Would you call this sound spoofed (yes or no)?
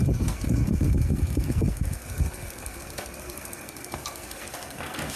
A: yes